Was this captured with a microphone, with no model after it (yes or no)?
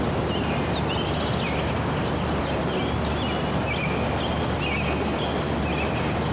yes